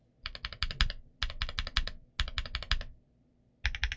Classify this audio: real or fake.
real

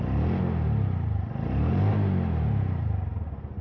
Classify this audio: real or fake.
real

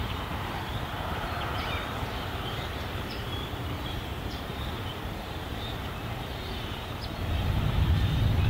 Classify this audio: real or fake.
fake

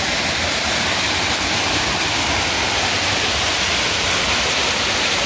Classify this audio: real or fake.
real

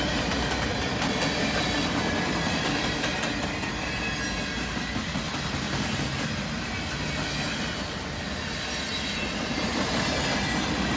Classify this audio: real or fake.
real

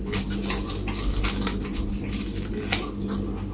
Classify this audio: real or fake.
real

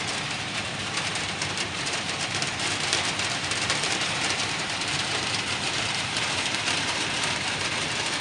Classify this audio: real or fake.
fake